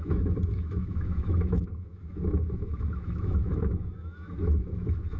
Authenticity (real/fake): fake